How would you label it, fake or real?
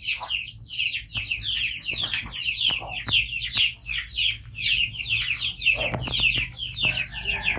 real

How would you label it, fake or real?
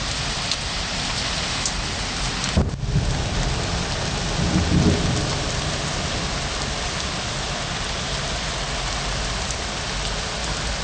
real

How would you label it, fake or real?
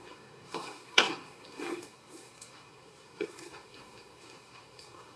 fake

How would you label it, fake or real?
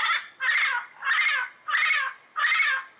real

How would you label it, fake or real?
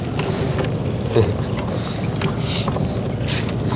real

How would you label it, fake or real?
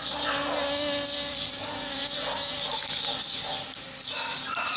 real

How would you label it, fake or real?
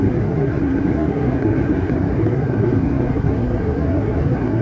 fake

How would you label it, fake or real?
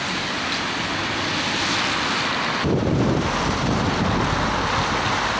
real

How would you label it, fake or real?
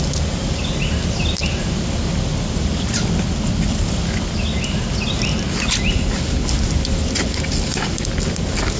real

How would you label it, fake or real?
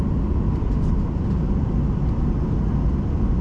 real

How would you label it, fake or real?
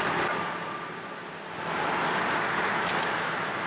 real